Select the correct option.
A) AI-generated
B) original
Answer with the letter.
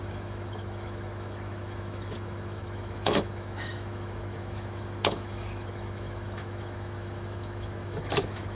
A